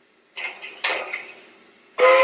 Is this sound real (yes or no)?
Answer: yes